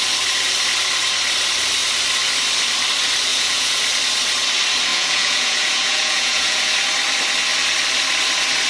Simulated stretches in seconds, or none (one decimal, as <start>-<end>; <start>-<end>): 3.3-3.8; 4.9-6.6